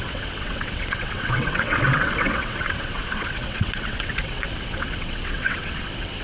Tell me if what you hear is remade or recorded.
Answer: remade